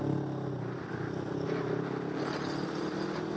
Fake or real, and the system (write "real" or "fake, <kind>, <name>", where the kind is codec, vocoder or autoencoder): real